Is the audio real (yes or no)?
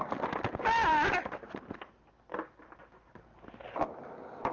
yes